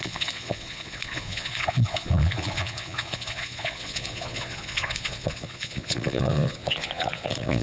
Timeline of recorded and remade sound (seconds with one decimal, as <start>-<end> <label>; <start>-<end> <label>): 0.0-7.6 remade